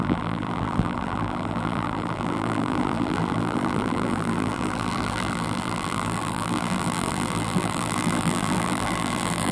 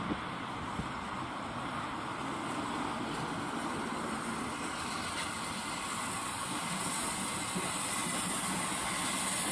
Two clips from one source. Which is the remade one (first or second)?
first